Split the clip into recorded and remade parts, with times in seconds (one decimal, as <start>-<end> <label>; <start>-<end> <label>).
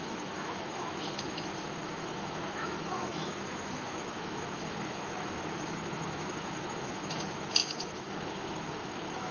0.0-9.3 remade